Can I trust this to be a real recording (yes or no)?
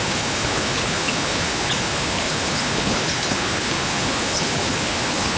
no